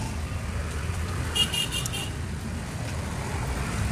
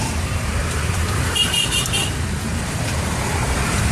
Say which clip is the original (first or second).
first